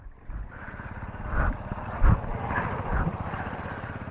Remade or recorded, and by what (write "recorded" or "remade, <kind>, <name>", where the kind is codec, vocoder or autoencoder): recorded